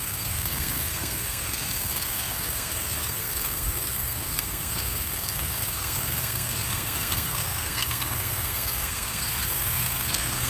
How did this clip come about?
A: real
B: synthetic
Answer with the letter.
B